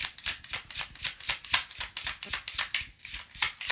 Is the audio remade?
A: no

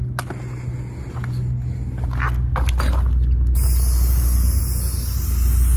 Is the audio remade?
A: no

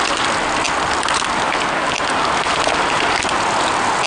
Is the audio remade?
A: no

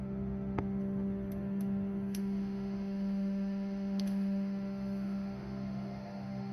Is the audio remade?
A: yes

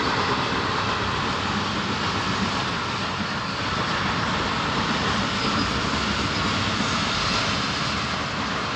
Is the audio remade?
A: no